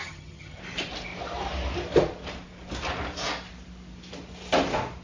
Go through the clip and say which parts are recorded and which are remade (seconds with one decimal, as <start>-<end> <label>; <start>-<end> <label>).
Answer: 0.0-0.6 remade; 0.6-5.0 recorded